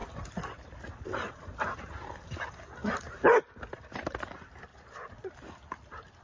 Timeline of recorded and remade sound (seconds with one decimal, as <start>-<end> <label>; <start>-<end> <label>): 0.0-4.7 recorded; 4.7-5.3 remade; 5.3-6.2 recorded